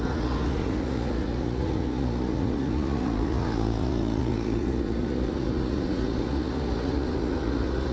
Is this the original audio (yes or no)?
no